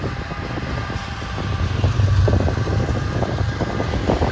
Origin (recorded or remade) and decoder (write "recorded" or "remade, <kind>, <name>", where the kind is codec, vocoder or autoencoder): recorded